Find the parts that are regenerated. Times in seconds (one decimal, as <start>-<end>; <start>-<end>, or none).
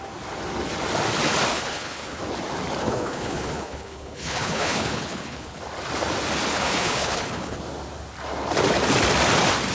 1.5-2.2; 2.8-5.6; 6.5-7.6